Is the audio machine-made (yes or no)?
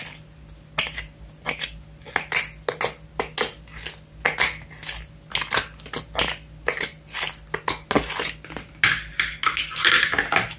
no